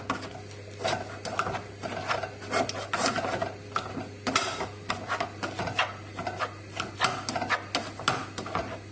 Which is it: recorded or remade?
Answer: recorded